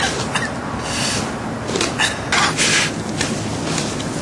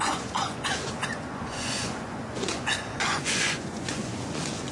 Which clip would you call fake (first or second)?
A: second